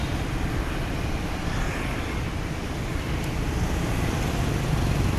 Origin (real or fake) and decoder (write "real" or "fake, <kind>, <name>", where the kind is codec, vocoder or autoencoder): real